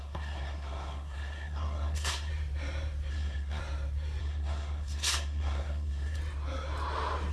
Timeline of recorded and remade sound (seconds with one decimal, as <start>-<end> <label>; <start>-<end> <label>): 0.0-2.3 remade; 2.3-3.1 recorded; 3.1-3.6 remade; 3.6-4.2 recorded; 4.2-6.2 remade; 6.2-7.3 recorded